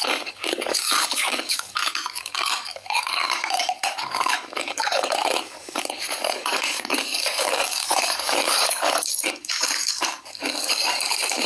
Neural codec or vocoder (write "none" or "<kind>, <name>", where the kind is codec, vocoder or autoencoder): codec, DAC